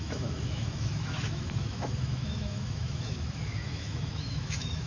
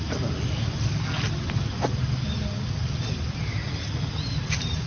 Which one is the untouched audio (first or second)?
second